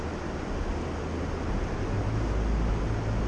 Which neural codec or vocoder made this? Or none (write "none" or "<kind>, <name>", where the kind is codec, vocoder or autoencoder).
none